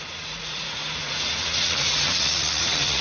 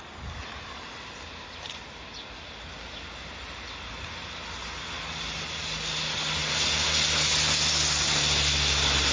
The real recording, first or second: second